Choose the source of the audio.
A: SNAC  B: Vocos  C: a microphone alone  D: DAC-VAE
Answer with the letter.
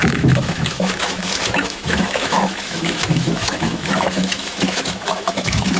D